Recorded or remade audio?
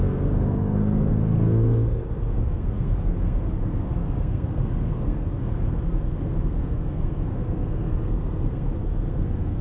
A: remade